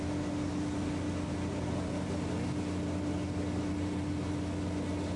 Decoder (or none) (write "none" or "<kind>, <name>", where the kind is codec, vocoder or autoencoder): none